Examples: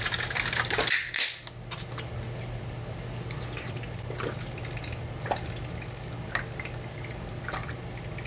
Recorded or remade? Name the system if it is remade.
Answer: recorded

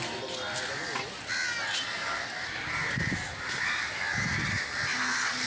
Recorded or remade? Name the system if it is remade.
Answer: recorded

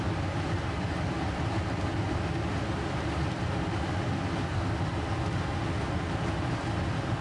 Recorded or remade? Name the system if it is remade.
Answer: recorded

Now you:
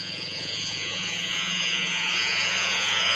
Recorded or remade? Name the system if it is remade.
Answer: remade, vocoder, Vocos